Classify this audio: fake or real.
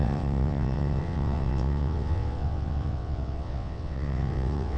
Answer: fake